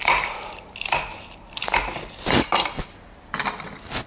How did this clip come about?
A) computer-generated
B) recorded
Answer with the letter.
B